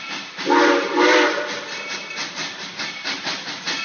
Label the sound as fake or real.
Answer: real